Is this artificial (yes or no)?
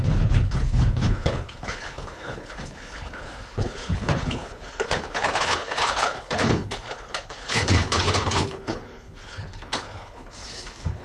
yes